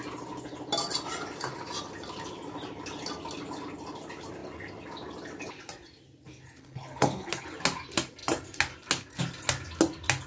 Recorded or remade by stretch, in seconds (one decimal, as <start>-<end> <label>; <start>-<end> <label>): 0.0-6.6 recorded; 6.6-7.3 remade; 7.3-10.3 recorded